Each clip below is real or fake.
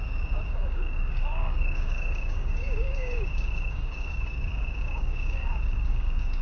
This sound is fake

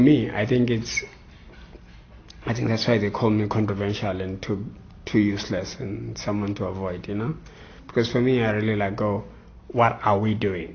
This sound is real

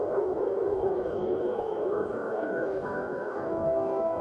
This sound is fake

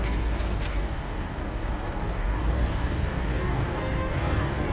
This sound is fake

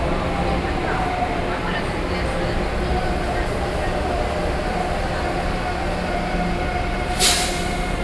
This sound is real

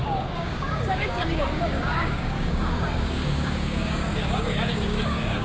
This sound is fake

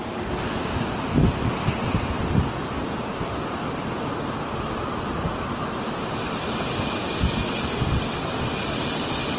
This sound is real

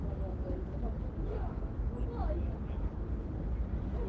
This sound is real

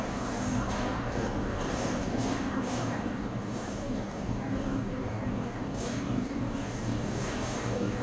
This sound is fake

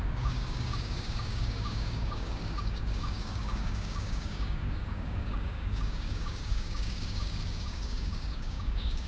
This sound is fake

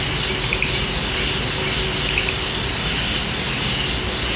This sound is real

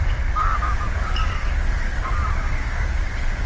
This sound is fake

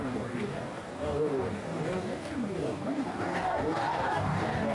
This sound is fake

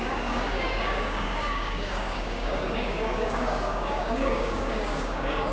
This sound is fake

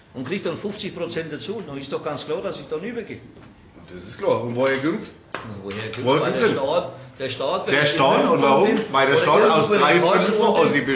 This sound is real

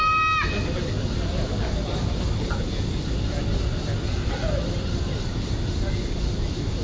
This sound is real